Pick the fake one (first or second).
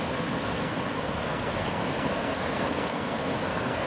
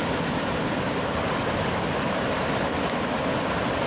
first